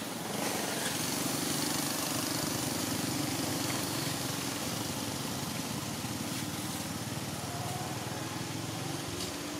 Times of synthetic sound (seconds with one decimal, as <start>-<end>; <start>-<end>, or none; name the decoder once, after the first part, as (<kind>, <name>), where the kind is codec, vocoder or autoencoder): 3.5-4.6 (codec, DAC)